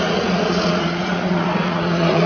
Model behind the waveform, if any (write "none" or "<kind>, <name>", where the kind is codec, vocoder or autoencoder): vocoder, Vocos